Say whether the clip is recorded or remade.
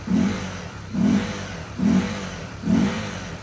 remade